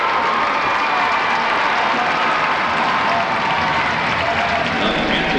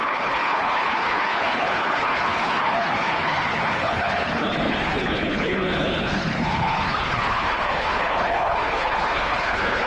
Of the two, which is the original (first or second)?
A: first